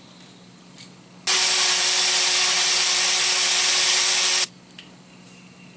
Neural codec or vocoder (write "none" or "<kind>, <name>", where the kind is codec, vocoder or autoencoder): none